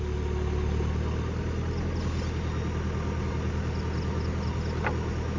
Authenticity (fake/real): real